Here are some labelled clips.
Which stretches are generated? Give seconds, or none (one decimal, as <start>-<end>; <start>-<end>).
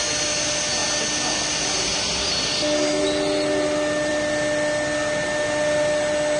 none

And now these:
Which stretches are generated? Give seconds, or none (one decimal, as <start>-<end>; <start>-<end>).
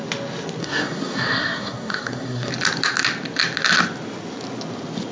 0.6-2.5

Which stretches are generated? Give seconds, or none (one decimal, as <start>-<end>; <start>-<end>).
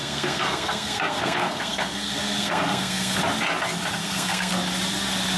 0.0-3.2; 4.0-4.5